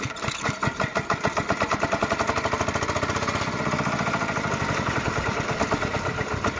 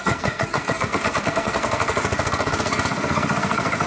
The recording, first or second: first